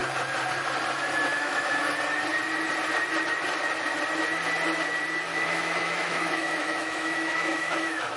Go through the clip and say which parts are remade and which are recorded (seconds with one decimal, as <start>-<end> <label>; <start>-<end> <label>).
0.0-1.3 recorded; 1.3-1.8 remade; 1.8-5.3 recorded; 5.3-8.2 remade